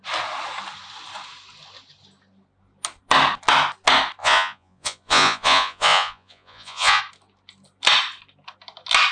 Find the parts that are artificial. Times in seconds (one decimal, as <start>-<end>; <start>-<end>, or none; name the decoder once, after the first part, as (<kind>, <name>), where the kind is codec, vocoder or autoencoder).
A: 4.2-7.0 (vocoder, Vocos)